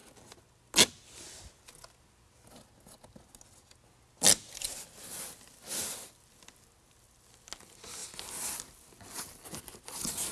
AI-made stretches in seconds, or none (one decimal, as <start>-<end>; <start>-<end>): none